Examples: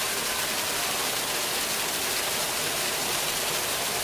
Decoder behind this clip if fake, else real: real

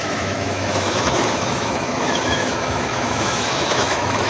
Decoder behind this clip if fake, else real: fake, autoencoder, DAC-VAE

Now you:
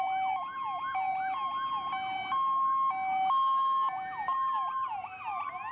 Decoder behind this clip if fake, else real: real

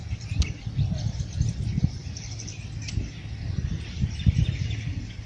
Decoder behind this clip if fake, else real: real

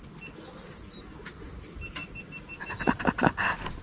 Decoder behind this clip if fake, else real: real